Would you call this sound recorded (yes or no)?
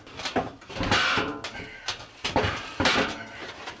yes